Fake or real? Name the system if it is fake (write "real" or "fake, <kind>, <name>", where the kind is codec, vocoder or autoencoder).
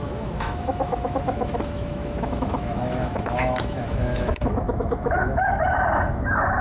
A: fake, autoencoder, DAC-VAE